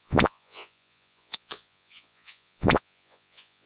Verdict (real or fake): fake